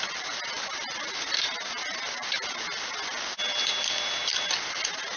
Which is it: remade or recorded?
recorded